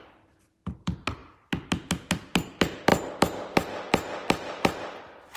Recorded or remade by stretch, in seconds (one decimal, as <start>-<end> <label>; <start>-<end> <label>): 0.0-5.4 recorded